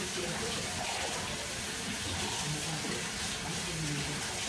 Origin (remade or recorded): recorded